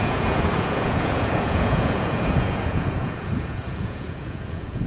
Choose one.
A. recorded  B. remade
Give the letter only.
B